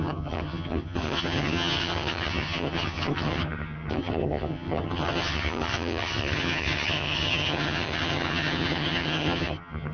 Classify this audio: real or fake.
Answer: fake